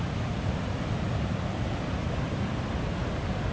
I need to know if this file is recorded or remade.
remade